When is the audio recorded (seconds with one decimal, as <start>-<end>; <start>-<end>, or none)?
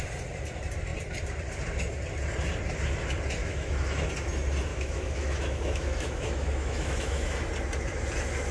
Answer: 0.0-3.4; 4.1-4.7; 7.5-8.5